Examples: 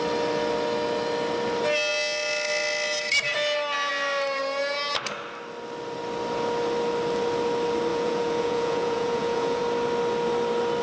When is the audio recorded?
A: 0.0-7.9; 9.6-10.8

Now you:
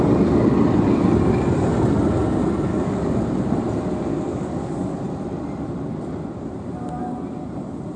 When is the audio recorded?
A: 0.0-2.7; 3.2-4.1; 4.7-8.0

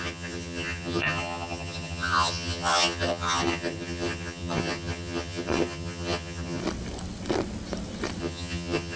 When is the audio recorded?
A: 6.6-8.2

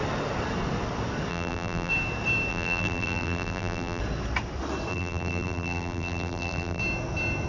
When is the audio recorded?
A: 0.0-1.3; 1.9-2.5; 4.0-4.9; 6.8-7.5

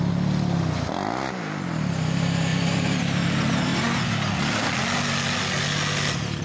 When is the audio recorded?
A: 0.0-2.5; 3.0-6.4

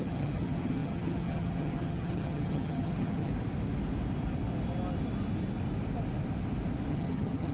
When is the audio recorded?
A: 3.3-6.9

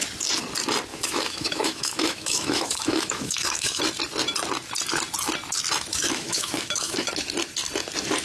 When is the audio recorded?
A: 0.0-0.9; 3.8-5.9; 7.1-8.2